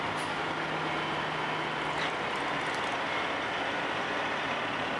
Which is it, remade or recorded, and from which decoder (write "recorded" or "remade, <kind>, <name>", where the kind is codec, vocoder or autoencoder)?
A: recorded